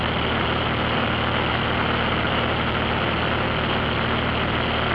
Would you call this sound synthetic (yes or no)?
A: no